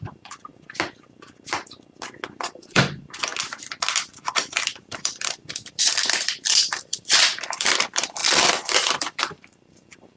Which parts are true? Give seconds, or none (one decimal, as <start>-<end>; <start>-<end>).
0.5-2.4; 3.3-4.0